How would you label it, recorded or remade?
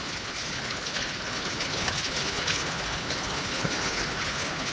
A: remade